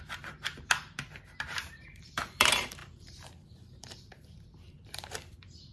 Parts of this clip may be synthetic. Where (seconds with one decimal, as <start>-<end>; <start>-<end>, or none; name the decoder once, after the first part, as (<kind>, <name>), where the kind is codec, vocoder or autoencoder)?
0.0-5.7 (vocoder, BigVGAN v2)